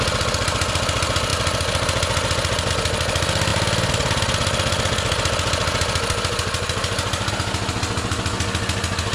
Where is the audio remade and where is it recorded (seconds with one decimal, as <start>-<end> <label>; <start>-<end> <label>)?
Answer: 0.0-9.1 recorded